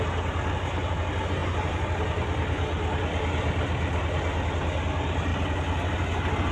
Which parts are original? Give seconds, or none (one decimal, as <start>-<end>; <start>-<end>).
0.0-6.5